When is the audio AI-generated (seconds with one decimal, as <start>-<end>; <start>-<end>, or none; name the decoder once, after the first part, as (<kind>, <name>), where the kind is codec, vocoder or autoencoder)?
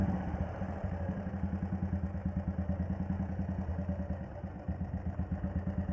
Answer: 0.0-1.3 (vocoder, BigVGAN v2)